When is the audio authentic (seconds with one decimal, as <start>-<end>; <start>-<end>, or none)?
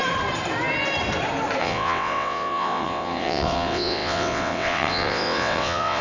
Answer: 0.0-1.6